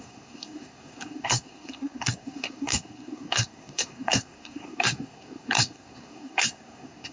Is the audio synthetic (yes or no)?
yes